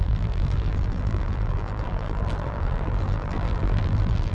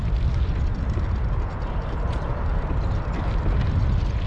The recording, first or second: second